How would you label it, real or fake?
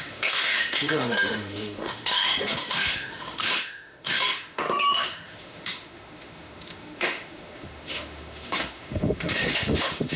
fake